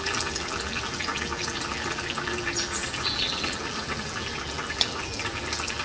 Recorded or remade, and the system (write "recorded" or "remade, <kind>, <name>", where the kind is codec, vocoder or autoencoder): remade, vocoder, BigVGAN v2